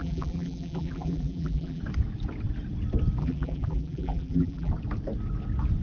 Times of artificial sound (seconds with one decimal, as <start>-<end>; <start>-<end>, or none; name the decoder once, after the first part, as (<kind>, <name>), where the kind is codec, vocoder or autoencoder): 0.0-1.8 (vocoder, BigVGAN v2); 3.2-4.7